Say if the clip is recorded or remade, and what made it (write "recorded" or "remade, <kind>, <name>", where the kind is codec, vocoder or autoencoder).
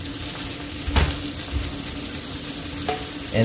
recorded